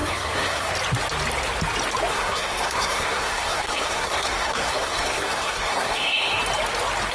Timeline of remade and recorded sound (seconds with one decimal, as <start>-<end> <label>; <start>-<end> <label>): 0.0-0.7 remade; 0.7-2.1 recorded; 2.1-6.4 remade; 6.4-7.1 recorded